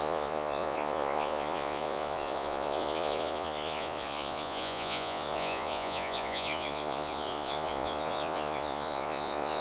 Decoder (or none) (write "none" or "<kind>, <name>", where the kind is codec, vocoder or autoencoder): vocoder, Vocos